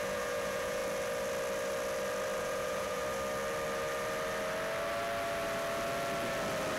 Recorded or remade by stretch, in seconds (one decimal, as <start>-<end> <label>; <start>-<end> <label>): 0.0-0.8 remade; 0.8-2.4 recorded; 2.4-3.0 remade; 3.0-6.8 recorded